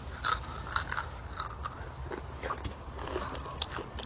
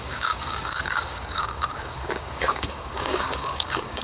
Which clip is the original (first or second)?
first